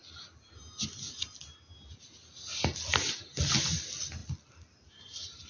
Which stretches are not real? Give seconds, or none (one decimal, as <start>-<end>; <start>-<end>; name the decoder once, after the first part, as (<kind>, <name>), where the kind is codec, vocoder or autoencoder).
none